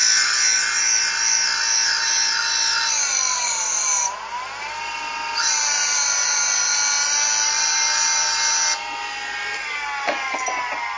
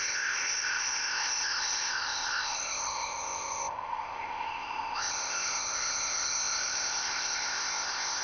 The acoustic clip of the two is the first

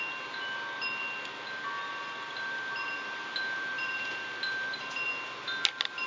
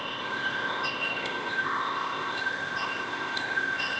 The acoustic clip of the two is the first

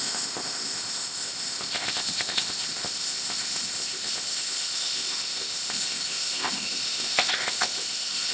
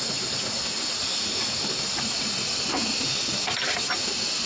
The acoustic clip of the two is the second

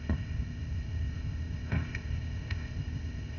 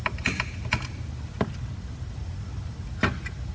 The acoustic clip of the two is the second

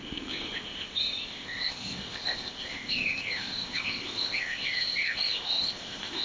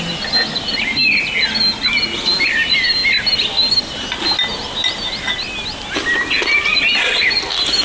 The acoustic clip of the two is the second